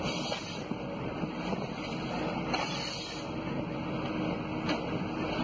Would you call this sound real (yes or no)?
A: yes